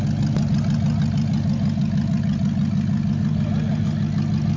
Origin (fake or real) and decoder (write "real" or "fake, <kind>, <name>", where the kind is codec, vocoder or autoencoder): real